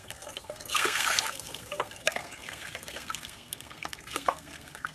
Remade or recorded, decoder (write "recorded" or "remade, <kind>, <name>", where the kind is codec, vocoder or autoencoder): remade, codec, SNAC